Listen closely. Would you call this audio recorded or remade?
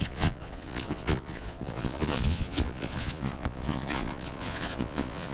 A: remade